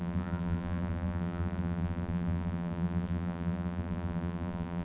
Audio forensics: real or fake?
fake